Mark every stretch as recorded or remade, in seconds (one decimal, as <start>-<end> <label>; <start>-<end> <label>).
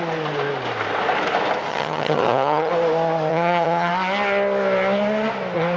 0.0-1.7 recorded; 1.7-2.7 remade; 2.7-3.3 recorded; 3.3-3.9 remade; 3.9-5.8 recorded